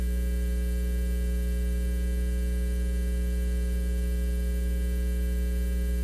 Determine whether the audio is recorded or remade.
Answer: recorded